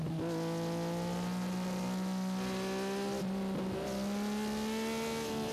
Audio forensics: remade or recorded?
recorded